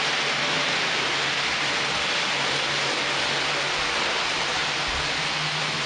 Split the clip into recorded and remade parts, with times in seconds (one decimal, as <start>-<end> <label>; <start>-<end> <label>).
0.0-5.9 recorded